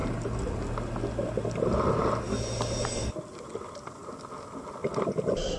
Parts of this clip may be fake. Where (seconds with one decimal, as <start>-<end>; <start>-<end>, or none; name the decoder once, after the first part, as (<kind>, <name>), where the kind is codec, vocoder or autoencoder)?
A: none